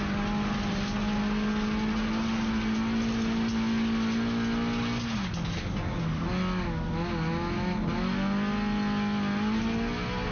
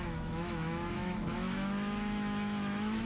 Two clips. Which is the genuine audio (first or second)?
first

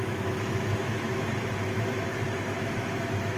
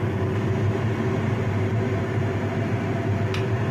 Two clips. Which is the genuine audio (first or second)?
second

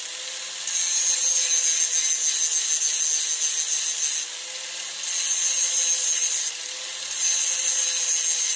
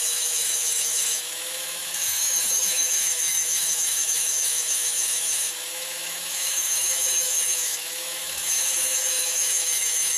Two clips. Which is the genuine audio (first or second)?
first